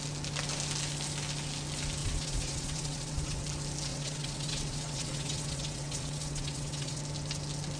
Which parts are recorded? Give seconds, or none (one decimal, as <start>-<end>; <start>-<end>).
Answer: 0.0-2.0; 3.4-3.9; 7.0-7.8